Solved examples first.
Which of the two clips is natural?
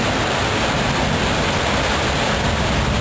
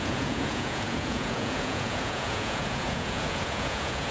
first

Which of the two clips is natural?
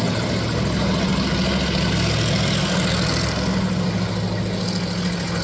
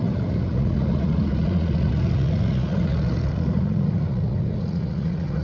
first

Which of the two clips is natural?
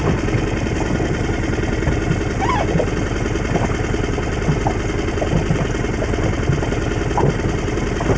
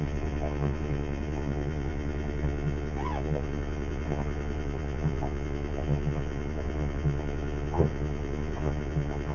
first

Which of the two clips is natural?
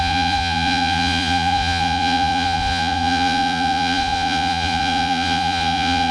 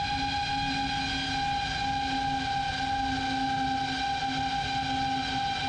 second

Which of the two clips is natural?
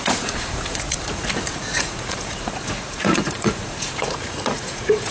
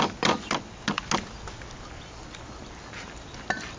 second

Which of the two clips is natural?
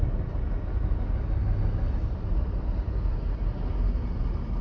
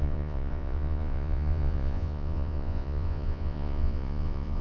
first